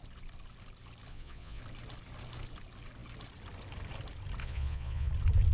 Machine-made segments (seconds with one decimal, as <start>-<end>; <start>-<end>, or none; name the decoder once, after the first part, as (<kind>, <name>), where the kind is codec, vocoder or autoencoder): 1.1-1.6 (vocoder, Vocos); 4.4-5.1